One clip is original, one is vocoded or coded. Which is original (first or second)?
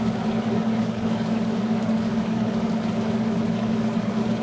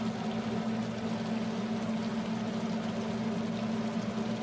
second